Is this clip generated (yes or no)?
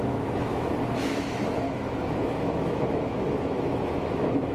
yes